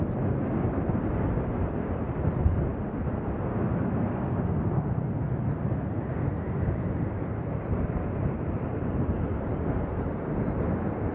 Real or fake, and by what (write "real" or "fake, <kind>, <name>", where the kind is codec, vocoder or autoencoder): real